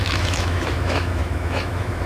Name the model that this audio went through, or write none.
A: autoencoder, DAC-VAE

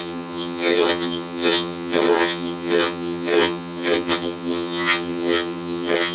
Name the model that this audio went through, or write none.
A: vocoder, HiFi-GAN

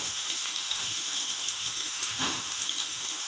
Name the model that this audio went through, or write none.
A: autoencoder, DAC-VAE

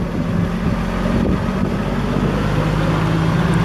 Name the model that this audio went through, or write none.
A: none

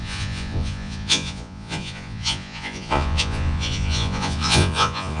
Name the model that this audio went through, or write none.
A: vocoder, Vocos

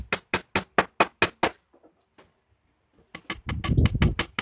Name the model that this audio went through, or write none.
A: none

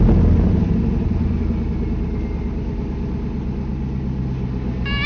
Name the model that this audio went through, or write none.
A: none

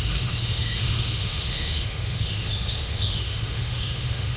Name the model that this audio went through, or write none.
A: autoencoder, DAC-VAE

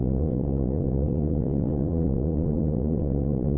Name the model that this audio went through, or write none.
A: vocoder, Vocos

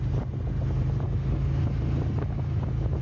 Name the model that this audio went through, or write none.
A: none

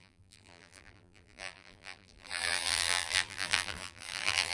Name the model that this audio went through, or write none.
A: vocoder, BigVGAN v2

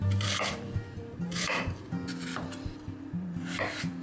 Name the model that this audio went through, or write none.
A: vocoder, BigVGAN v2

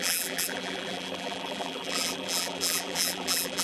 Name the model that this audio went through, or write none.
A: vocoder, BigVGAN v2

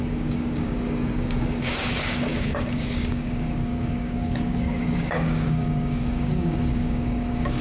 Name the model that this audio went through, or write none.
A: codec, DAC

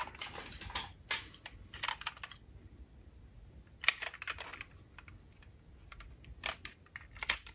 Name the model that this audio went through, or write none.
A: none